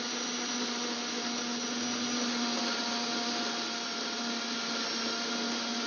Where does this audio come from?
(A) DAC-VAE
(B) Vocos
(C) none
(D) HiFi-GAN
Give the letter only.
C